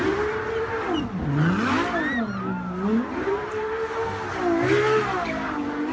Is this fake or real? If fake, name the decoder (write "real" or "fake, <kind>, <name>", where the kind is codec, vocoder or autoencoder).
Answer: real